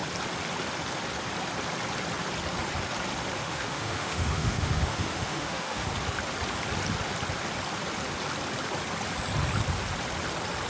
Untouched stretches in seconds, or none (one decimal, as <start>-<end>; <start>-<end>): 0.0-3.4; 5.9-10.7